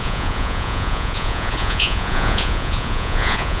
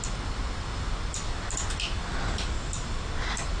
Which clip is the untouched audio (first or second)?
second